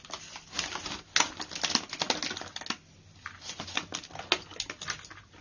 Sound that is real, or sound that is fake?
real